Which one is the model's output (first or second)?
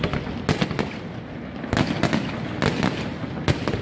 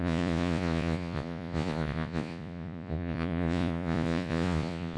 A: second